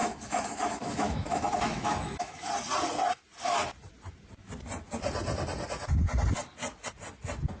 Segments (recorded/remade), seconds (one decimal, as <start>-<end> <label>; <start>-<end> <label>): 0.0-2.5 remade; 2.5-7.6 recorded